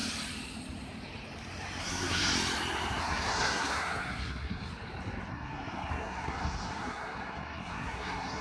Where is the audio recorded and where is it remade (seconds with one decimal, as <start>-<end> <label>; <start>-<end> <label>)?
0.0-1.8 recorded; 1.8-2.3 remade; 2.3-3.0 recorded; 3.0-4.7 remade; 4.7-5.3 recorded; 5.3-8.4 remade